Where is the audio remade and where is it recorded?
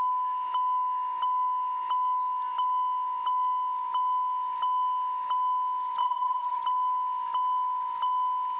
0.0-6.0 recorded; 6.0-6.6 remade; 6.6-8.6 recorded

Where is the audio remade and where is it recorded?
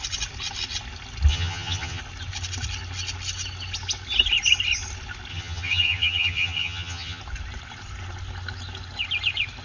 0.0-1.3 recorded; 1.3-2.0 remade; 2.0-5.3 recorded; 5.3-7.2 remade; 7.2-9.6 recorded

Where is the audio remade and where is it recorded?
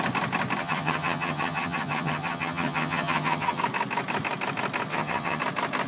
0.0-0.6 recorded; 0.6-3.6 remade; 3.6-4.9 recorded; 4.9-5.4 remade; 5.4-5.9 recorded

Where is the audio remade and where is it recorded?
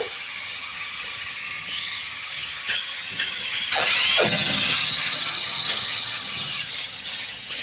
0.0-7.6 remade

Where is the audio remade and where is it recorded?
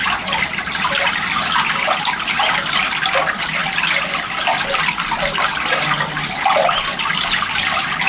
0.0-8.1 recorded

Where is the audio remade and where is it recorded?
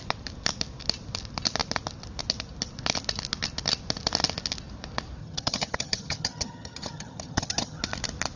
0.0-5.2 recorded; 5.2-7.8 remade; 7.8-8.4 recorded